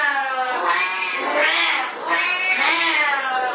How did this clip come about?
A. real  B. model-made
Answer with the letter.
B